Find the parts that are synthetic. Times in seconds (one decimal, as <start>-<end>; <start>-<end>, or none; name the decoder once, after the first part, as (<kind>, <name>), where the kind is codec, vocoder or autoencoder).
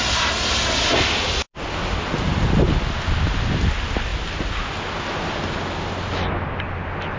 none